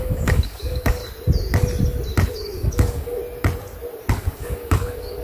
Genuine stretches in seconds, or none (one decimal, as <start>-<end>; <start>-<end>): 1.0-2.3; 3.2-4.1